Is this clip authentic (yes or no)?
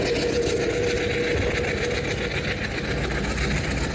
yes